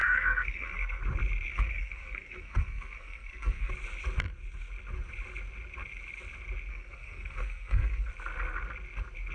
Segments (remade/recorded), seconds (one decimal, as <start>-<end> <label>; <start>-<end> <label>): 0.0-1.0 remade; 1.0-1.5 recorded; 1.5-3.7 remade; 3.7-6.7 recorded; 6.7-8.1 remade; 8.1-9.3 recorded